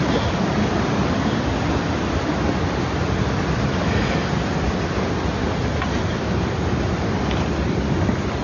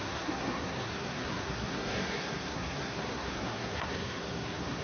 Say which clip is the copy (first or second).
second